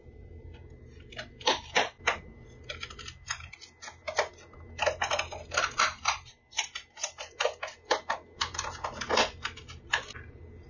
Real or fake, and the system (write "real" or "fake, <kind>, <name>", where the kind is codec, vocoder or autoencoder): real